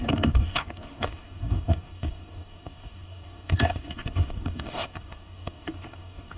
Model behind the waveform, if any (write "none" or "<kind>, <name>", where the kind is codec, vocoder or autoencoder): codec, DAC